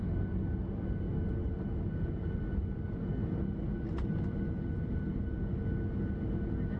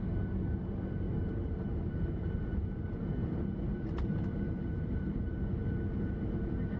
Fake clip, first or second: second